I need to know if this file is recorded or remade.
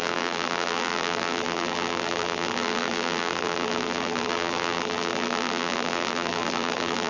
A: remade